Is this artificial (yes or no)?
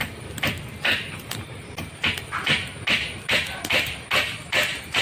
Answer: no